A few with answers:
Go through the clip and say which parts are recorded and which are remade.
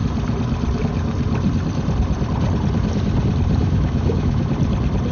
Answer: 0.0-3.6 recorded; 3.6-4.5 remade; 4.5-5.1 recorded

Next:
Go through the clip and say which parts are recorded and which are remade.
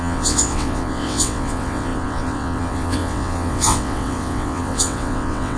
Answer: 0.0-5.6 remade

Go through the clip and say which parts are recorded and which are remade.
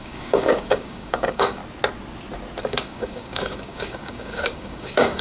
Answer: 0.0-1.6 remade; 1.6-2.6 recorded; 2.6-5.2 remade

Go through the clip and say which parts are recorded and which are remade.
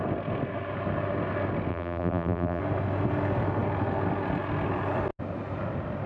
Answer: 0.0-1.7 recorded; 1.7-2.6 remade; 2.6-6.1 recorded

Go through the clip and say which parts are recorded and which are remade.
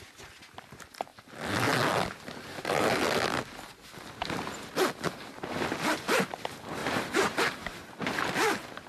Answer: 0.0-6.8 recorded; 6.8-8.0 remade; 8.0-8.9 recorded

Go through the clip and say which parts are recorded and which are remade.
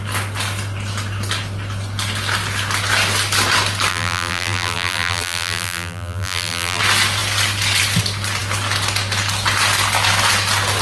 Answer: 0.0-3.9 recorded; 3.9-6.8 remade; 6.8-10.8 recorded